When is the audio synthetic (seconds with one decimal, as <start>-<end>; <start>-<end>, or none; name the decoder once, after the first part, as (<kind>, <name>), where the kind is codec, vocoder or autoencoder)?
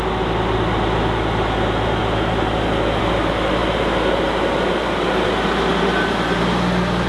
none